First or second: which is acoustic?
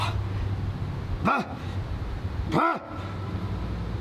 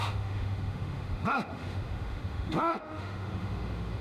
first